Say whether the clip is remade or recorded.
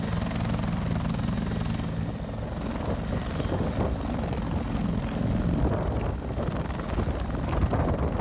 recorded